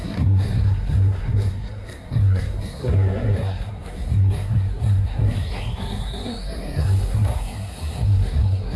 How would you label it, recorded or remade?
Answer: remade